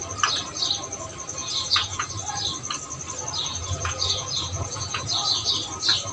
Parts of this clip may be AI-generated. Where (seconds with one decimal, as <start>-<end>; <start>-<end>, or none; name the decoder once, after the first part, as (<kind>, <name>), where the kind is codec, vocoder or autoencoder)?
1.4-2.1 (vocoder, Vocos); 3.4-5.5